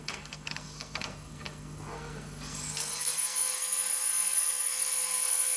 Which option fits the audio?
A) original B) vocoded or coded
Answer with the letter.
B